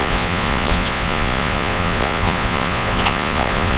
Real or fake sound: fake